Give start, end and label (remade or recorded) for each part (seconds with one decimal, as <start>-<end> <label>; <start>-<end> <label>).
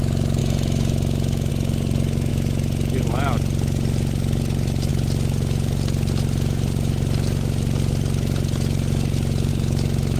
0.0-0.4 recorded; 0.4-1.5 remade; 1.5-9.5 recorded; 9.5-10.2 remade